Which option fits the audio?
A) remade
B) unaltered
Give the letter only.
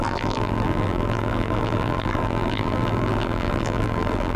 A